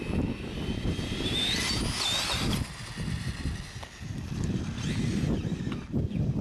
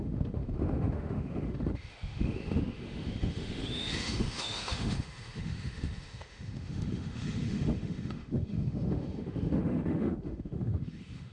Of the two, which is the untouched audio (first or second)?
first